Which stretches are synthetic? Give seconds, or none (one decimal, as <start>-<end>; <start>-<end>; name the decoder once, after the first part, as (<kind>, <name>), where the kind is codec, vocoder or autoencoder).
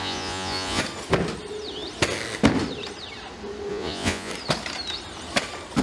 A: 0.0-0.8 (vocoder, Vocos); 3.7-4.3